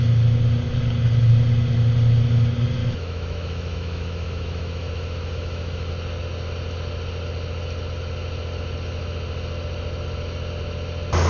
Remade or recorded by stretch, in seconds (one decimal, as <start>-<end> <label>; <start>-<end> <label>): 0.0-2.8 recorded; 2.8-5.9 remade; 5.9-11.3 recorded